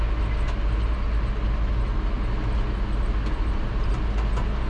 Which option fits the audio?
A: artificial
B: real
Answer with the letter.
B